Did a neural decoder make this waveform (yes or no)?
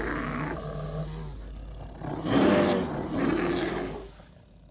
no